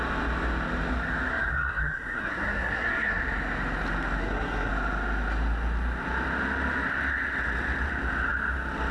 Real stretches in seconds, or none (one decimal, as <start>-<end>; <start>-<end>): 0.0-1.3; 3.2-4.2; 4.7-8.9